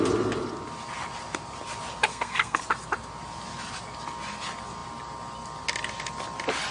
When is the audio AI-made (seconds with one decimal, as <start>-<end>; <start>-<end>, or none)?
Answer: 2.1-2.6